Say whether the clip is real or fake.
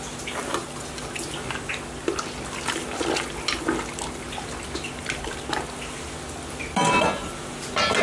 real